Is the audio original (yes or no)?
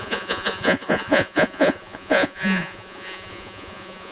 no